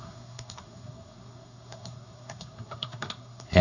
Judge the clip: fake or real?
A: fake